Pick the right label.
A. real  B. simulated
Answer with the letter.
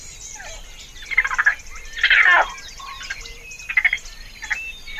B